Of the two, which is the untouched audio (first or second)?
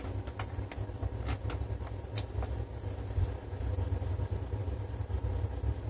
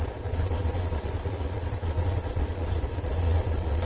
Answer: first